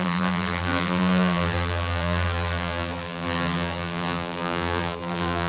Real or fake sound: fake